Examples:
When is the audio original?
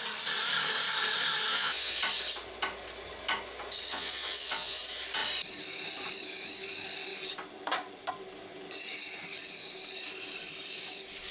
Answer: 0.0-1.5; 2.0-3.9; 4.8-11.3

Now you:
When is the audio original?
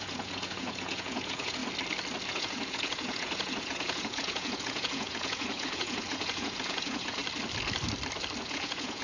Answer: 1.6-2.3; 7.2-8.4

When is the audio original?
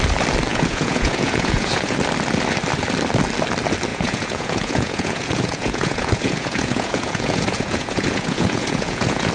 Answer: 0.0-0.5; 2.0-3.9